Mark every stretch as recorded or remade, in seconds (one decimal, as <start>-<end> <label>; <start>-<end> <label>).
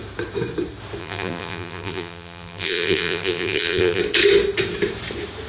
0.0-1.0 recorded; 1.0-4.0 remade; 4.0-5.5 recorded